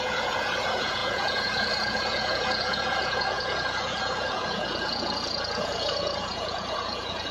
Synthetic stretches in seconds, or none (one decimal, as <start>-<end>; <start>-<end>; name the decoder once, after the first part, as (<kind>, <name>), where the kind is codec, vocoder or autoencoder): 0.0-7.3 (vocoder, Vocos)